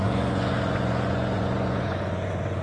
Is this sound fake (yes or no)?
yes